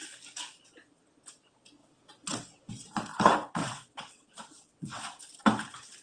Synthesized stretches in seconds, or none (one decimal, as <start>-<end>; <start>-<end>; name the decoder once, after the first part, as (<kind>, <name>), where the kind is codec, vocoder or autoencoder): 1.8-2.7 (vocoder, WaveNeXt); 3.6-5.0